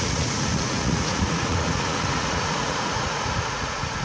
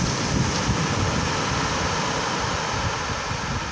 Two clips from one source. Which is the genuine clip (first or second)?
second